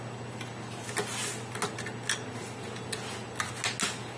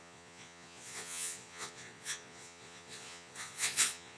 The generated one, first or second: second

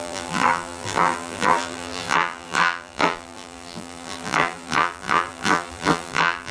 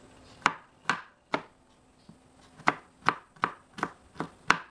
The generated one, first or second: first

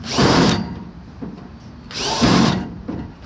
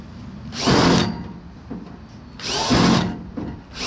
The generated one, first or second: first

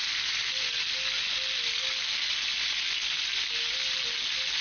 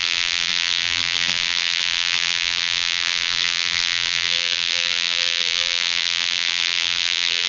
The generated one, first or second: second